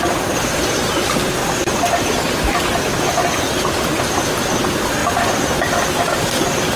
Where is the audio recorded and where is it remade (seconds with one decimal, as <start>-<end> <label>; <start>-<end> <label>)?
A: 0.0-6.8 recorded